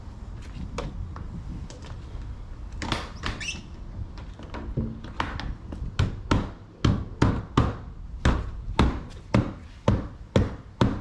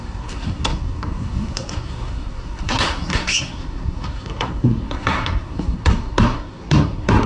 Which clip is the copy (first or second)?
second